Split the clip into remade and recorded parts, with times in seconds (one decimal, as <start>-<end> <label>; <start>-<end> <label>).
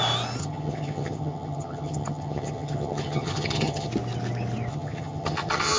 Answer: 0.0-0.4 recorded; 0.4-3.9 remade; 3.9-4.7 recorded; 4.7-5.8 remade